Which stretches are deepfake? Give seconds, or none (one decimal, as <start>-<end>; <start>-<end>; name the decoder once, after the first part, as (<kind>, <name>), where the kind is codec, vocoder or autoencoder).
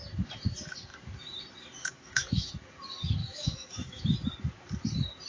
1.8-2.5 (autoencoder, DAC-VAE); 3.2-4.0